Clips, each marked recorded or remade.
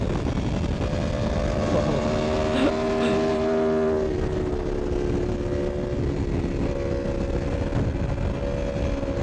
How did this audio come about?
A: recorded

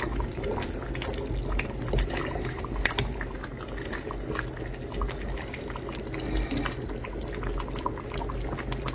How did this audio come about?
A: recorded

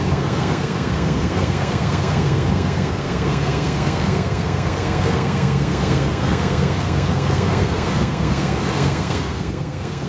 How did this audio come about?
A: remade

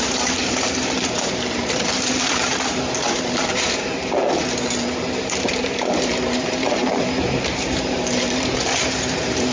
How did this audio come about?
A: remade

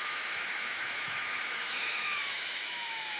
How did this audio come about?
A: remade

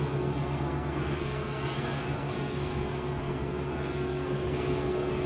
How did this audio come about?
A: remade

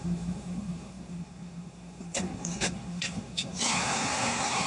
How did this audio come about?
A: remade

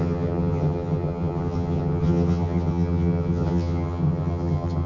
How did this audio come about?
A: remade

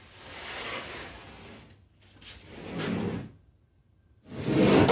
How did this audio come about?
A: recorded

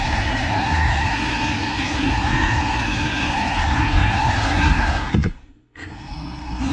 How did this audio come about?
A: remade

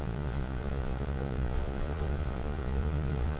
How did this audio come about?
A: remade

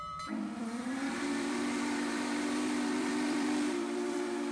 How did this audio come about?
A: remade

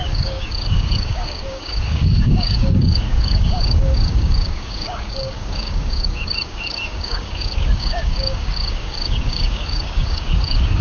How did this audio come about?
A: remade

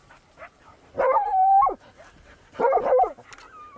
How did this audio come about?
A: recorded